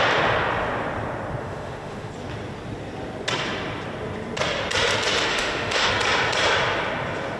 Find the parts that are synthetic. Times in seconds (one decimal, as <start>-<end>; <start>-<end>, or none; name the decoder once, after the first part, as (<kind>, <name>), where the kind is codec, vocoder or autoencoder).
1.4-2.1 (autoencoder, DAC-VAE); 5.3-5.9